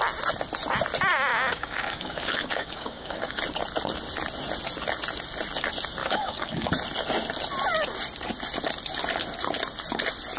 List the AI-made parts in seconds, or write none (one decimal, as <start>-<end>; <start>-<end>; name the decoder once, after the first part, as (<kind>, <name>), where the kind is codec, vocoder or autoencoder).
1.3-3.4 (codec, DAC); 6.0-6.7